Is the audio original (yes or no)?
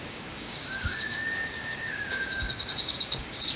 no